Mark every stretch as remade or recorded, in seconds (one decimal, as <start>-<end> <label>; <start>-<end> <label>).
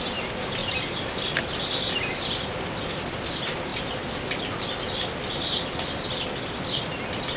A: 0.0-0.6 recorded; 0.6-1.2 remade; 1.2-7.4 recorded